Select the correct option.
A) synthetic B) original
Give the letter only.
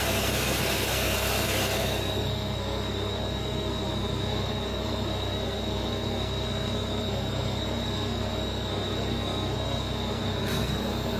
A